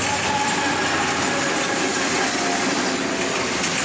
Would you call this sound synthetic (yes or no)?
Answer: no